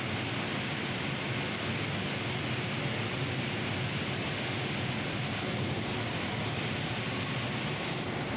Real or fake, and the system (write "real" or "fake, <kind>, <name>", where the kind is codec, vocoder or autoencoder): real